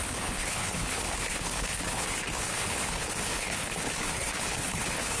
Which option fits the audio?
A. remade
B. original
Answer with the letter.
A